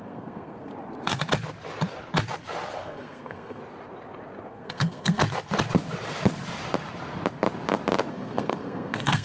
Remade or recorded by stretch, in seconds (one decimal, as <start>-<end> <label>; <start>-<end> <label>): 0.0-0.7 remade; 0.7-2.7 recorded; 2.7-3.6 remade; 3.6-4.5 recorded; 4.5-5.2 remade; 5.2-8.1 recorded; 8.1-9.2 remade